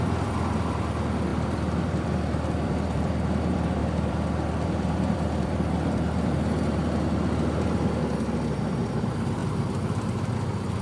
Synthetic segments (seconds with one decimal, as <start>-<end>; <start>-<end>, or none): 0.0-9.4